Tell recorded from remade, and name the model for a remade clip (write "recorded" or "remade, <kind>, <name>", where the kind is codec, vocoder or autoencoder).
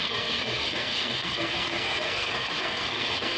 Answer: remade, codec, SNAC